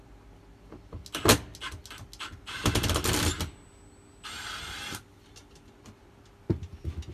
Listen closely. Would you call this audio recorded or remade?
recorded